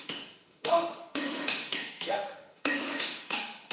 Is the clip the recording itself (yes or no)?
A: no